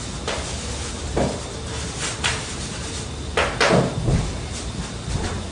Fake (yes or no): no